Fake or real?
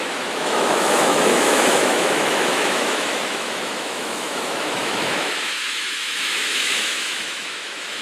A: fake